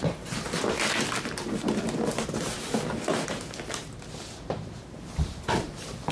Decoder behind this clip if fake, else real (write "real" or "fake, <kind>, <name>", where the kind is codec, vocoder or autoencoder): fake, vocoder, BigVGAN v2